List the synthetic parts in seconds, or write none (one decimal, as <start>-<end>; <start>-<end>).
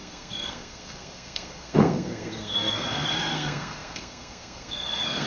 0.0-5.3